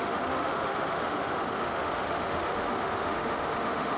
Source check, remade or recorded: remade